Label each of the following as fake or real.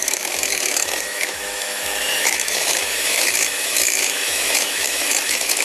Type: fake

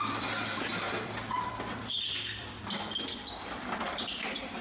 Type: fake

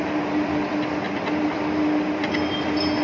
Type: real